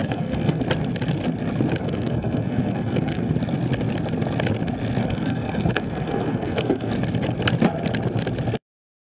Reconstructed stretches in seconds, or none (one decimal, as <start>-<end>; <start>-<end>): 0.0-0.6; 1.8-3.3; 5.0-6.9